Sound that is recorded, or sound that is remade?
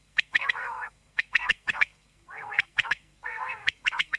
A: remade